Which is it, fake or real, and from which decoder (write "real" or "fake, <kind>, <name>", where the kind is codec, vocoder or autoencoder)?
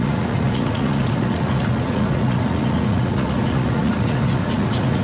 fake, vocoder, Vocos